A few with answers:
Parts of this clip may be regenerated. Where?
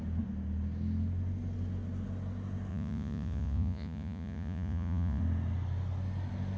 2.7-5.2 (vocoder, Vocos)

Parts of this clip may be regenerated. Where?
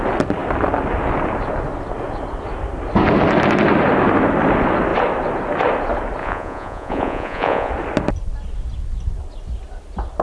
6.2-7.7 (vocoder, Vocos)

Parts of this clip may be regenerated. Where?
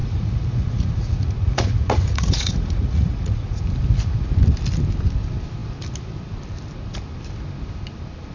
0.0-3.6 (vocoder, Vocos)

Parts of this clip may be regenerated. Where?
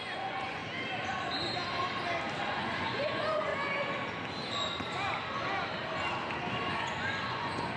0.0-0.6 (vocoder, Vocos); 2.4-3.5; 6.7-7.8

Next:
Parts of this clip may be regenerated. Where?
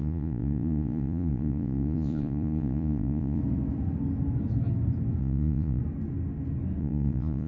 0.0-3.4 (vocoder, Vocos); 5.2-5.8; 6.8-7.5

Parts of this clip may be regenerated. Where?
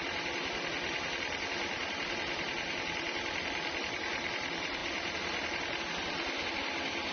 none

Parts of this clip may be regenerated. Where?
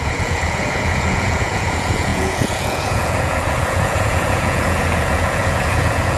0.0-6.2 (vocoder, Vocos)